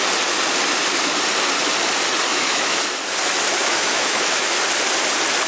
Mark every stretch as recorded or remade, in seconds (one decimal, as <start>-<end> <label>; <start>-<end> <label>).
0.0-2.3 recorded; 2.3-2.8 remade; 2.8-3.6 recorded; 3.6-4.6 remade; 4.6-5.5 recorded